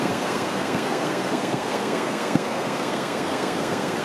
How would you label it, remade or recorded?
remade